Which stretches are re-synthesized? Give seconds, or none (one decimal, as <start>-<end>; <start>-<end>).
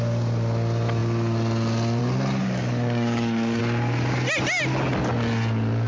2.4-3.6